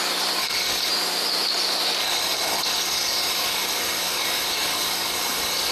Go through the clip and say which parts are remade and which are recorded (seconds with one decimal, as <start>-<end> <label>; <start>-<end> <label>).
0.0-0.4 recorded; 0.4-0.9 remade; 0.9-2.0 recorded; 2.0-5.7 remade